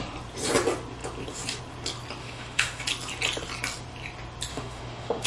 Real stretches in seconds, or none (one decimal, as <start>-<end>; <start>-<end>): 0.0-2.2; 2.8-4.5

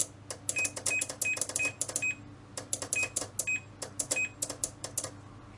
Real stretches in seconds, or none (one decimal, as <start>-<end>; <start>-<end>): 0.0-5.6

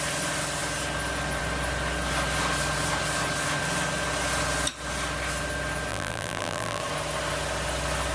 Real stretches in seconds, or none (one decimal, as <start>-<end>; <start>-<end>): 0.0-5.9; 6.8-8.1

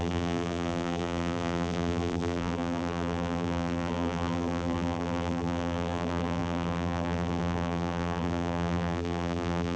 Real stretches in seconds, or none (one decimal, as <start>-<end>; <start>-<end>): none

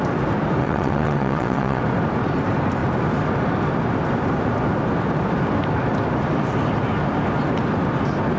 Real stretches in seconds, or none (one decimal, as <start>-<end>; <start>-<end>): 0.0-0.6; 1.8-8.4